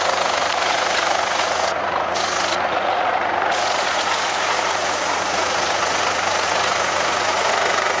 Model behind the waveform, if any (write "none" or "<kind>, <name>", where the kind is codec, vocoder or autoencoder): vocoder, Vocos